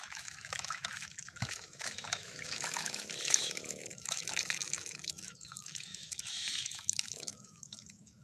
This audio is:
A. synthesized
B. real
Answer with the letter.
A